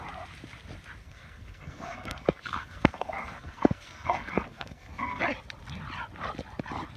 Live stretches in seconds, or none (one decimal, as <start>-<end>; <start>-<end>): 0.0-1.0; 5.2-7.0